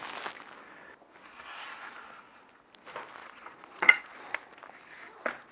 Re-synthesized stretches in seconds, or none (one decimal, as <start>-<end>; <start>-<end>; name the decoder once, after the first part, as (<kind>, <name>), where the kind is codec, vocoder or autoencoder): 3.2-4.0 (vocoder, Vocos)